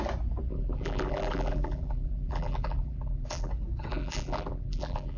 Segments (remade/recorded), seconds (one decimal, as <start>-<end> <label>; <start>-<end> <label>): 0.0-0.5 recorded; 0.5-3.5 remade; 3.5-3.9 recorded; 3.9-5.2 remade